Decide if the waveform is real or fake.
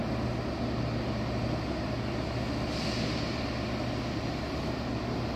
real